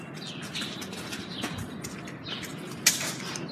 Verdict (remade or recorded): recorded